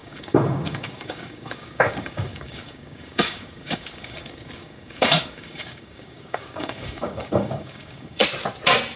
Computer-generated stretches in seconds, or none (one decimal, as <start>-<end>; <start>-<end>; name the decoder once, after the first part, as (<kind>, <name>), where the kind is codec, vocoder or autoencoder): 0.0-8.2 (codec, DAC)